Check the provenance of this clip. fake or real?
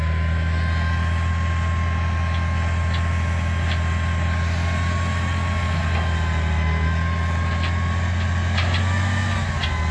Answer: real